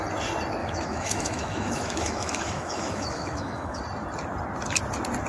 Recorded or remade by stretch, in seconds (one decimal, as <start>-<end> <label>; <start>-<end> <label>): 0.0-0.6 recorded; 0.6-3.8 remade; 3.8-5.3 recorded